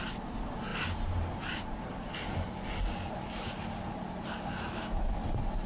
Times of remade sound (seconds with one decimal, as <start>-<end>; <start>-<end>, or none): none